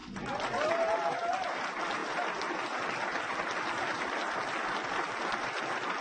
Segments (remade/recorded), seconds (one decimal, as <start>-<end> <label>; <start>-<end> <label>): 0.0-6.0 recorded